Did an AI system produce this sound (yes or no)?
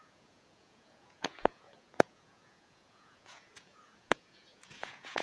yes